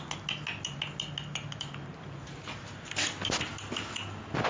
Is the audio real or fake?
real